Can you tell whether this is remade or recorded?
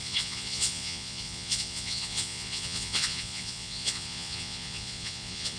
remade